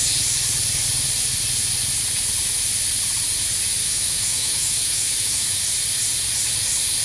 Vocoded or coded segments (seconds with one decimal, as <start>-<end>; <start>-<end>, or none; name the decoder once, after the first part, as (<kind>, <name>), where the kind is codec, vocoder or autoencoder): 3.8-5.6 (autoencoder, DAC-VAE)